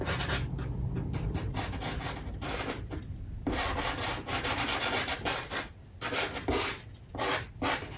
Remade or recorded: remade